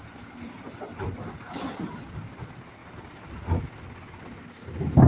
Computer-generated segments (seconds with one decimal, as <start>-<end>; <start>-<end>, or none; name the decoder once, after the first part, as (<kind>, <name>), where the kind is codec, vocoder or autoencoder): none